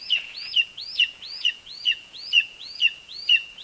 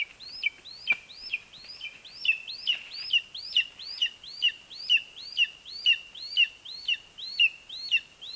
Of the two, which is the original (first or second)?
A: second